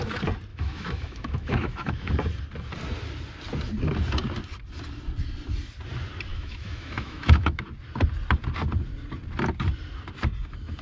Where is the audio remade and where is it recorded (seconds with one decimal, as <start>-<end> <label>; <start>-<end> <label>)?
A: 0.0-0.5 recorded; 0.5-2.1 remade; 2.1-6.3 recorded; 6.3-7.7 remade; 7.7-10.8 recorded